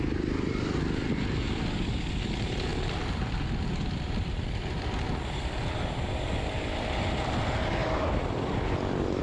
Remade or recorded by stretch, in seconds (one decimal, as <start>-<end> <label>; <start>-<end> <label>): 0.0-2.7 recorded; 2.7-5.4 remade; 5.4-7.8 recorded; 7.8-9.2 remade